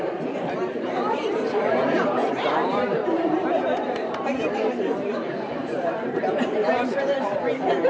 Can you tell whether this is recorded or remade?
remade